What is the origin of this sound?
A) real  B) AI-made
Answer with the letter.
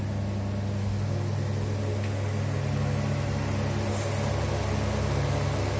A